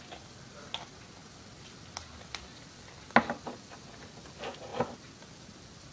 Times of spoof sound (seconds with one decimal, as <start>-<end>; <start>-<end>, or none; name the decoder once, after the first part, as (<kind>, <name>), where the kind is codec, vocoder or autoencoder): none